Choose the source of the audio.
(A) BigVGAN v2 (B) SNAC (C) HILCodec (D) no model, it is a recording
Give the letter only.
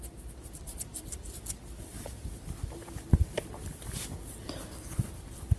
D